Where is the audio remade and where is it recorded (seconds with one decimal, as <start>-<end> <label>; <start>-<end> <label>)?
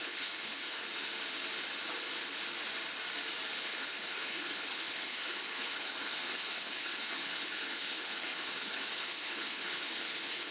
0.0-0.8 remade; 0.8-3.6 recorded; 3.6-10.5 remade